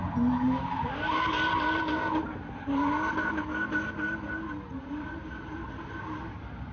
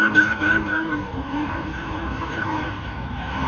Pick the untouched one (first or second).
first